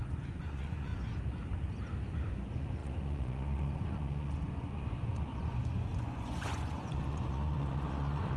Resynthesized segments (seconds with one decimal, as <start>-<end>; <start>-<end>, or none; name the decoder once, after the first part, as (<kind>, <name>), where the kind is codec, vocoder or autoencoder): 0.0-0.9 (vocoder, Vocos); 2.1-8.4